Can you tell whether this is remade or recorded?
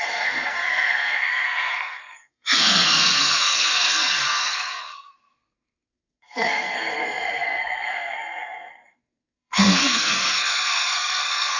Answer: remade